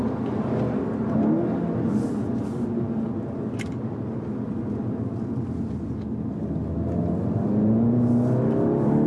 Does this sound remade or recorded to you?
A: recorded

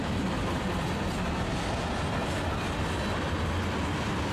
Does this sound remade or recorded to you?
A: recorded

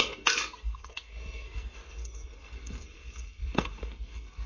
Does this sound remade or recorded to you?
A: remade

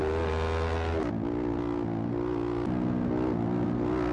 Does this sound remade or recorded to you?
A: recorded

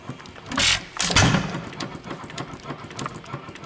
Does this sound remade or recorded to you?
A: recorded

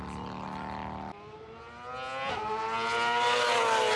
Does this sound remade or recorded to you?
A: recorded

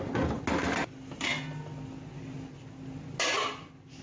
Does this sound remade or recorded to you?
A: recorded